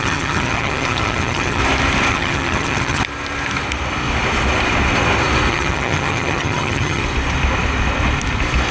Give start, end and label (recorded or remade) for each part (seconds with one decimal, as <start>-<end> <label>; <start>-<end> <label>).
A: 0.0-1.6 remade; 1.6-2.1 recorded; 2.1-3.0 remade; 3.0-5.5 recorded; 5.5-7.0 remade; 7.0-8.7 recorded